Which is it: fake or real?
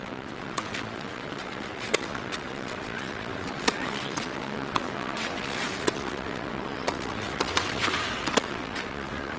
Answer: fake